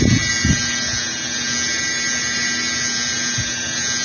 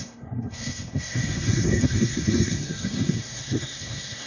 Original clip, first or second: first